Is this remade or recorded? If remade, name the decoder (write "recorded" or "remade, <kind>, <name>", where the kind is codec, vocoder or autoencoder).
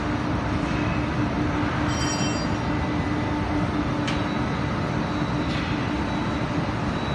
recorded